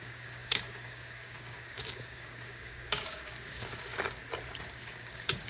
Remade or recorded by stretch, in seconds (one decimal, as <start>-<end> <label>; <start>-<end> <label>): 0.0-4.2 remade; 4.2-4.7 recorded; 4.7-5.5 remade